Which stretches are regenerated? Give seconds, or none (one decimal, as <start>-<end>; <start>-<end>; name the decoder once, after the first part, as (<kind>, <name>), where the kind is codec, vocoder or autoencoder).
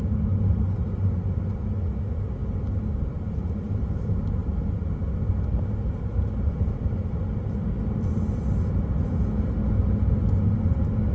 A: none